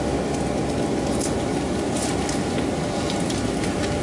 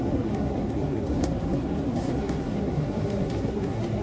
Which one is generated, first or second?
second